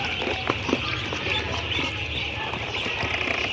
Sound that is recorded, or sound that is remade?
recorded